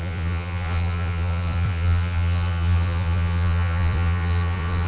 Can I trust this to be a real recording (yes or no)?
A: no